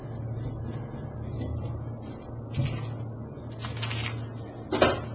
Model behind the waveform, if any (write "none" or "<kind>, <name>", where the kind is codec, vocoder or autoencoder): none